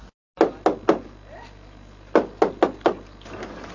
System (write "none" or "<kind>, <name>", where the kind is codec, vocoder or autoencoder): none